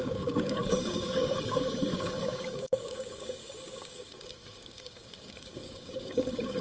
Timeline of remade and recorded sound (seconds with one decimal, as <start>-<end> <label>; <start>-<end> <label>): 0.0-6.6 remade